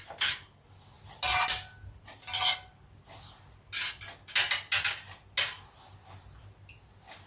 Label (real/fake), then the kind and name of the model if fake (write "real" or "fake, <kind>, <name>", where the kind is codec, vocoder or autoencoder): real